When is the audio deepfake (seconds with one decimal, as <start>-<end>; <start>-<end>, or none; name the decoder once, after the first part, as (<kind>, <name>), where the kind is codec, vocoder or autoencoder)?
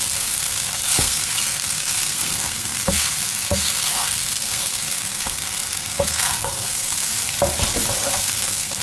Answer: 0.0-7.2 (codec, SNAC); 8.2-8.8